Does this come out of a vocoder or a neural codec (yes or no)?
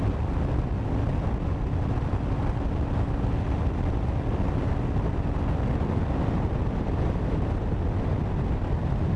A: no